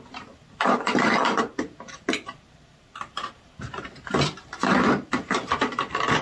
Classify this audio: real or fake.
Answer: fake